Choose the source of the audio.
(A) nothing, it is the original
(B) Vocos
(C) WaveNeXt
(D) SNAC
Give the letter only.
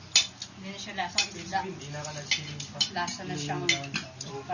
A